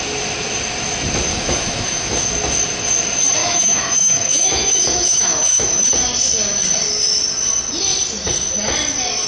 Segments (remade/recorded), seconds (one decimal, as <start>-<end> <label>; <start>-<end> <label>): 0.0-1.3 recorded; 1.3-2.1 remade; 2.1-3.4 recorded; 3.4-5.9 remade; 5.9-9.3 recorded